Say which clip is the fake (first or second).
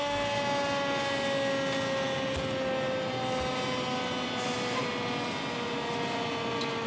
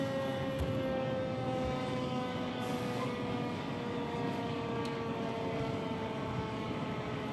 second